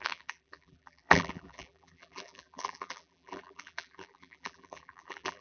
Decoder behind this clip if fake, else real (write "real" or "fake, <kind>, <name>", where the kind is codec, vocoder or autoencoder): fake, vocoder, BigVGAN v2